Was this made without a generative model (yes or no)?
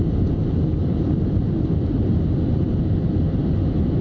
yes